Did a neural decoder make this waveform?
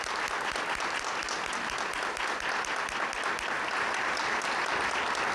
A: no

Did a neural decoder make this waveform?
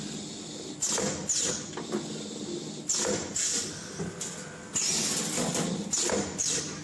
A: no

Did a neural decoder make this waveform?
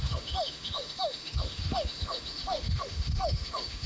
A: yes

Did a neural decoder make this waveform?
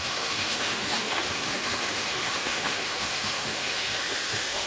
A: yes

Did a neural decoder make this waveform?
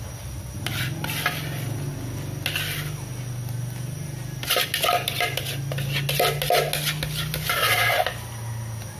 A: no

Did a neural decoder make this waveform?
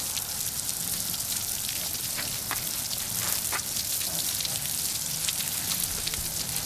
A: no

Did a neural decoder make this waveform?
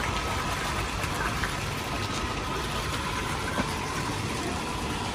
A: no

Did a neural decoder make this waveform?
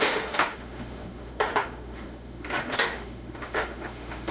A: yes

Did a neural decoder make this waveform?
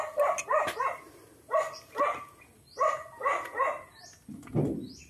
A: no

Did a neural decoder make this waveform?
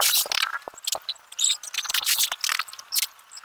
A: no